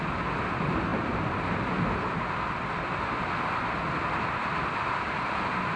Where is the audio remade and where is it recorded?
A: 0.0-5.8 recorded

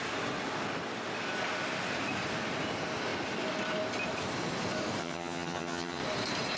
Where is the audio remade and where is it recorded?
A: 0.0-5.0 recorded; 5.0-6.0 remade; 6.0-6.6 recorded

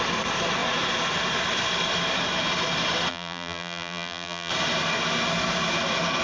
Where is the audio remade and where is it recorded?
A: 0.0-3.1 recorded; 3.1-4.5 remade; 4.5-6.2 recorded

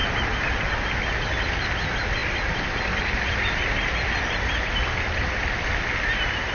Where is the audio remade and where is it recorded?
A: 0.0-0.6 remade; 0.6-6.5 recorded

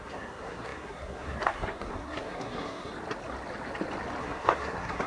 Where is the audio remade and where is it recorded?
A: 0.0-2.9 remade; 2.9-4.2 recorded; 4.2-5.1 remade

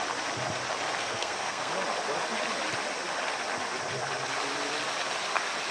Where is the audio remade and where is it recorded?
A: 0.0-1.0 recorded; 1.0-1.7 remade; 1.7-5.7 recorded